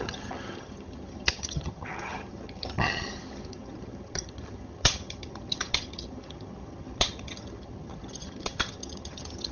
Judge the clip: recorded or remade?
remade